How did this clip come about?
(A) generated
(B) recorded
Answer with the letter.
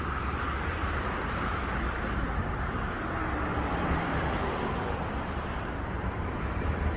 A